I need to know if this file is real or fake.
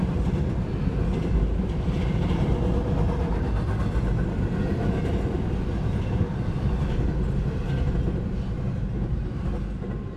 real